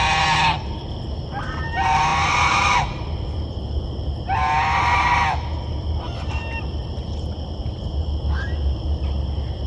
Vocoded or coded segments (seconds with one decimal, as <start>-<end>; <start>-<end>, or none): none